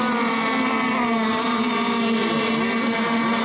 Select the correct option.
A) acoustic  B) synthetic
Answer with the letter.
A